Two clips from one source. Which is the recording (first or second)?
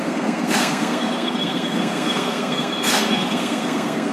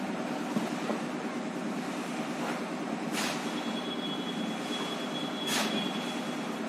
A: second